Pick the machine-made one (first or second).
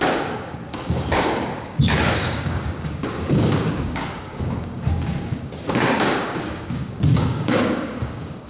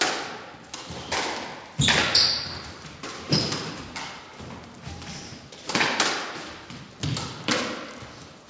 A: first